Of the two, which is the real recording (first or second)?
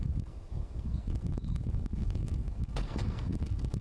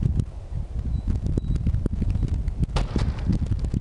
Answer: second